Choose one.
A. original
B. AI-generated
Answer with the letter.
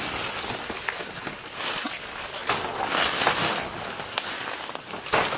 A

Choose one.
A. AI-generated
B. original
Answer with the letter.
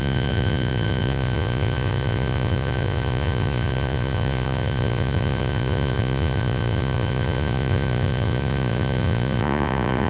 A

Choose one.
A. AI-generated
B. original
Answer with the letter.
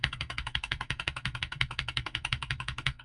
A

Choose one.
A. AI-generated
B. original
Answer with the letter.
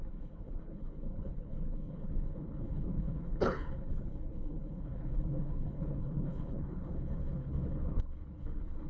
A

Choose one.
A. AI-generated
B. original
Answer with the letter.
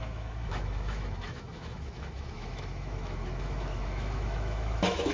A